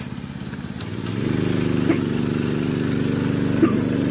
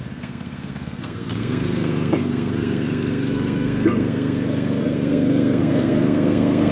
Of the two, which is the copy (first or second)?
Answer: second